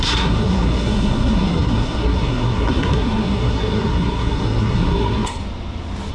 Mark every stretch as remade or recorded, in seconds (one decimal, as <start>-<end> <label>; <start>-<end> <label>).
0.0-5.4 remade; 5.4-6.1 recorded

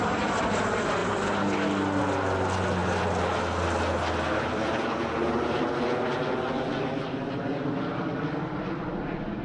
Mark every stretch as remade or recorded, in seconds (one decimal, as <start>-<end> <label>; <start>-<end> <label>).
0.0-9.4 recorded

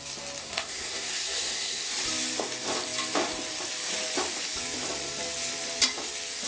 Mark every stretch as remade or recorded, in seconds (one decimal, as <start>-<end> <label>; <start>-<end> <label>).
0.0-0.4 recorded; 0.4-1.9 remade; 1.9-6.5 recorded

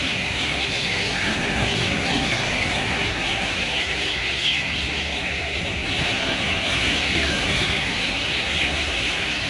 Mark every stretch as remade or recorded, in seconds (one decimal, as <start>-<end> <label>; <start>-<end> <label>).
0.0-9.5 remade

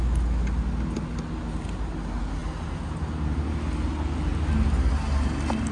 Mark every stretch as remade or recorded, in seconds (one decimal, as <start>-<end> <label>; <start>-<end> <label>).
0.0-5.7 recorded

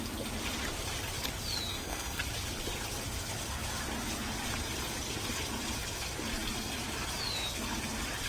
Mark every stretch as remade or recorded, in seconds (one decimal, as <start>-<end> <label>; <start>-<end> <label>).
0.0-1.7 recorded; 1.7-2.2 remade; 2.2-8.3 recorded

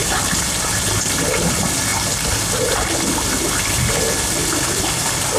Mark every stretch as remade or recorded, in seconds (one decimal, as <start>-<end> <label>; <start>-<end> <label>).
0.0-5.4 recorded

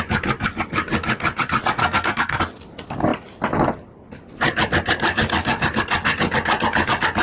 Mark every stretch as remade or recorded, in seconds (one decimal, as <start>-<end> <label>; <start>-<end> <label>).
0.0-1.8 recorded; 1.8-2.4 remade; 2.4-7.2 recorded